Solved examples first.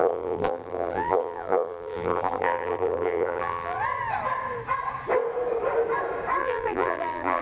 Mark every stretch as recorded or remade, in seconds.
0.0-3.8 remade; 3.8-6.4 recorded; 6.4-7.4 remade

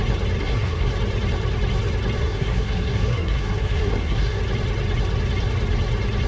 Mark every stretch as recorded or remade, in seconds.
0.0-0.4 recorded; 0.4-0.9 remade; 0.9-2.2 recorded; 2.2-4.4 remade; 4.4-6.3 recorded

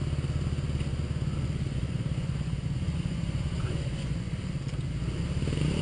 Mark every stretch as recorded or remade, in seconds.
0.0-0.9 recorded; 0.9-4.4 remade; 4.4-5.8 recorded

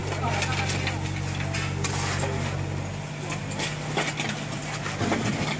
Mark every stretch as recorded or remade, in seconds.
0.0-5.6 recorded

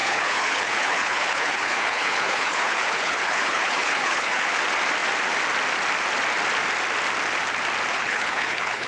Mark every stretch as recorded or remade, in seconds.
0.0-4.6 remade; 4.6-7.9 recorded; 7.9-8.9 remade

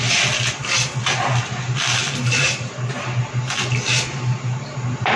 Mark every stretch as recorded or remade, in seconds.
0.0-5.2 recorded

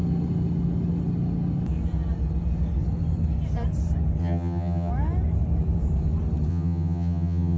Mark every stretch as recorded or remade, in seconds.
0.0-4.2 recorded; 4.2-4.9 remade; 4.9-6.5 recorded; 6.5-7.6 remade

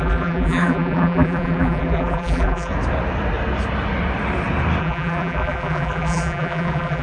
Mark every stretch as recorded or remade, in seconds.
0.0-2.7 remade; 2.7-4.8 recorded; 4.8-7.0 remade